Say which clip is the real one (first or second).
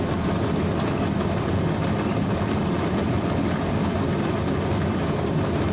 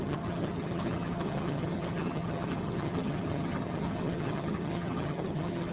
first